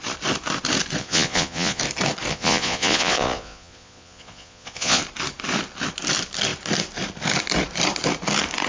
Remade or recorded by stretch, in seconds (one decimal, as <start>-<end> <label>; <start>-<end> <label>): 0.0-1.0 recorded; 1.0-1.8 remade; 1.8-2.3 recorded; 2.3-5.0 remade; 5.0-8.7 recorded